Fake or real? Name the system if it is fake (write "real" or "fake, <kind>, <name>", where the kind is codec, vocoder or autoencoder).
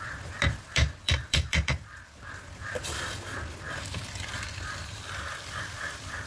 fake, vocoder, BigVGAN v2